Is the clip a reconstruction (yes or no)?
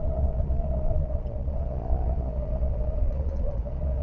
yes